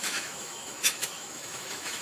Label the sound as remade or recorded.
remade